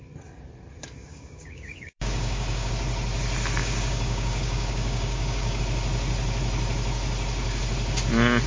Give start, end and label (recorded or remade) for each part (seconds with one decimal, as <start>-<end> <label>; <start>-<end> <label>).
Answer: 0.0-1.1 recorded; 1.1-2.7 remade; 2.7-3.6 recorded; 3.6-5.6 remade; 5.6-8.5 recorded